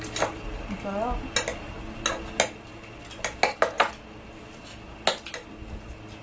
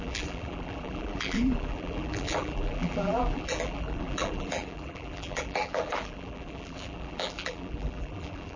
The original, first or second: first